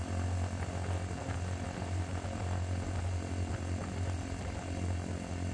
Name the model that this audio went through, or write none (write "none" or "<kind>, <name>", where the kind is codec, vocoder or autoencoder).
none